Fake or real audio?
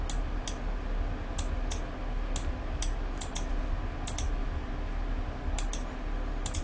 real